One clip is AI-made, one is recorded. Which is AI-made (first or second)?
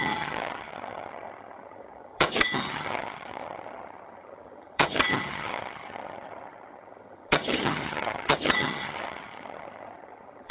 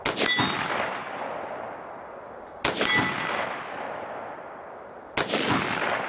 first